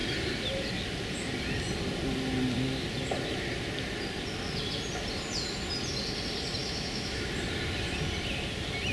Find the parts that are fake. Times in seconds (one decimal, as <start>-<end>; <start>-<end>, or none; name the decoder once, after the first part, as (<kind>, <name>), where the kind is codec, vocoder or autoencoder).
6.6-7.3 (autoencoder, DAC-VAE)